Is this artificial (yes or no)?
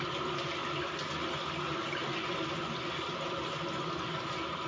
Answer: no